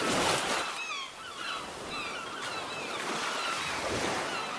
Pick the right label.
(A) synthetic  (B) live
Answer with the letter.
B